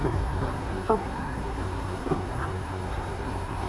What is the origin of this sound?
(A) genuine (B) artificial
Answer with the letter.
B